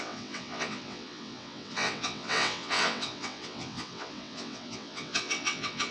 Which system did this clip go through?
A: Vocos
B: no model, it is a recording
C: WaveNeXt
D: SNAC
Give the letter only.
C